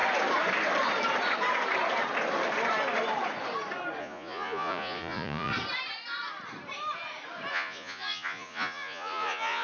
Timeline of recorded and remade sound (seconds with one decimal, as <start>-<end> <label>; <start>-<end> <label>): 0.0-4.0 recorded; 4.0-5.5 remade; 5.5-7.5 recorded; 7.5-9.6 remade